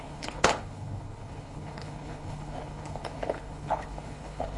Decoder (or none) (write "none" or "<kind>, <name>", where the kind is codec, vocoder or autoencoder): codec, HILCodec